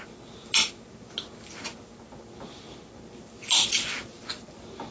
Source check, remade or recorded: recorded